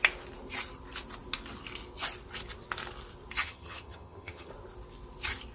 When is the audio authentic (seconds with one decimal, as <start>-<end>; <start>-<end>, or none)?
0.0-3.4; 4.5-5.5